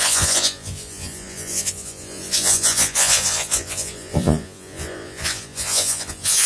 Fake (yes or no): yes